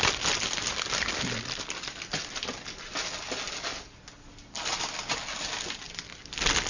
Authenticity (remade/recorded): recorded